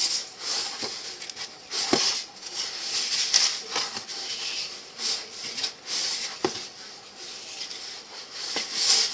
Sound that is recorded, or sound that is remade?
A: recorded